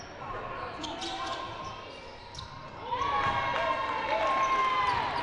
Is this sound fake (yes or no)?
no